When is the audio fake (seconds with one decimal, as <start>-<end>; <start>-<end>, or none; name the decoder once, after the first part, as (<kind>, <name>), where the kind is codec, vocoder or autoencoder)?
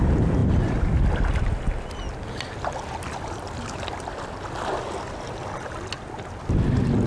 none